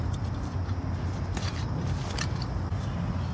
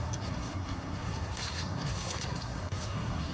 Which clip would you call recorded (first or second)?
first